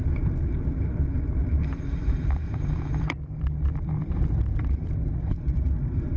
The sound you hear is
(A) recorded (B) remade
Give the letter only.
B